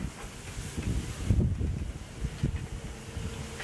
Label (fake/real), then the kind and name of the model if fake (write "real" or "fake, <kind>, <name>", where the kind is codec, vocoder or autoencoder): real